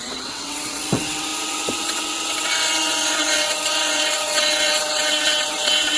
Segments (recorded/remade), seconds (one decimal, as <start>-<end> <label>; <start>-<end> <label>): 0.0-6.0 remade